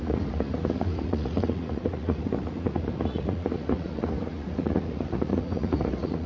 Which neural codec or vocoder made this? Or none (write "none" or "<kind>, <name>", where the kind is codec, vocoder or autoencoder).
vocoder, Vocos